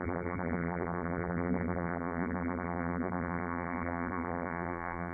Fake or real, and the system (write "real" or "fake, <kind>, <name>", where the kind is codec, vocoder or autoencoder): fake, vocoder, BigVGAN v2